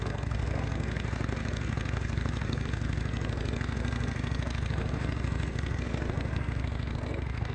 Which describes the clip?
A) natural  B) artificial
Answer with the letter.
B